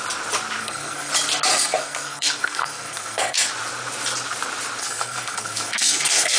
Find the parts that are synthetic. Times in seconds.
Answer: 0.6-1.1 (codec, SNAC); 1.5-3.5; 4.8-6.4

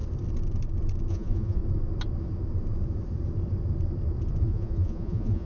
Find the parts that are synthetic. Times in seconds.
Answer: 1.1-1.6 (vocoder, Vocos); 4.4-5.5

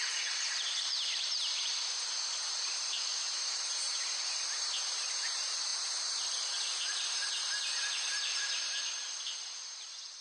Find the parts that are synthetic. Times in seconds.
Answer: 0.0-1.7 (vocoder, BigVGAN v2); 2.3-7.2; 8.4-10.2

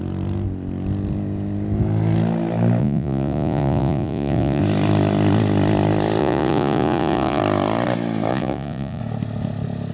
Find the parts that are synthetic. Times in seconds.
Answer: 2.8-4.6 (vocoder, Vocos); 6.2-7.4; 8.3-9.0

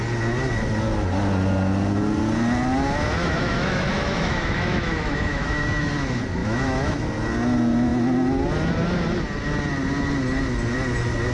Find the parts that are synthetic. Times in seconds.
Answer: 3.2-5.9 (autoencoder, DAC-VAE); 6.4-7.1